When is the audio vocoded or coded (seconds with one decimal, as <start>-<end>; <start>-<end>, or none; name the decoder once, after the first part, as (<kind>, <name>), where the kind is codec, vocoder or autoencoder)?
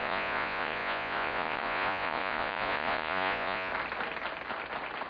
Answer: 0.0-3.7 (vocoder, Vocos)